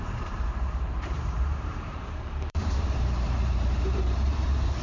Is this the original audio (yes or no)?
no